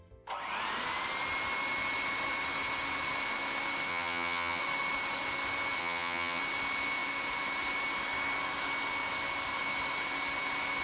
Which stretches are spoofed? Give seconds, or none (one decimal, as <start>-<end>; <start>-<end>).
3.9-4.6; 5.8-6.4